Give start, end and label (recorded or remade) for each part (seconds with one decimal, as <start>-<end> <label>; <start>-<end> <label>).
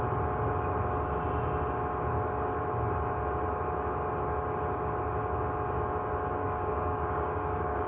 0.0-6.4 recorded; 6.4-7.9 remade